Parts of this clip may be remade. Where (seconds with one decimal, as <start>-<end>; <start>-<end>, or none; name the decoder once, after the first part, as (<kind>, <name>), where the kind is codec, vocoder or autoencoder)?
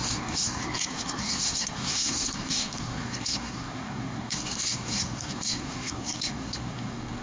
0.0-7.2 (codec, SNAC)